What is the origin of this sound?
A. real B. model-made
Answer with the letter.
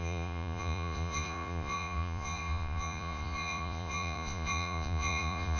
B